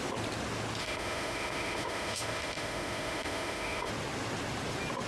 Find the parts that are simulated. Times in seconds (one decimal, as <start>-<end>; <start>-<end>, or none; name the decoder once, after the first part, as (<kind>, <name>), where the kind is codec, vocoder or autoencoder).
0.8-3.9 (autoencoder, DAC-VAE)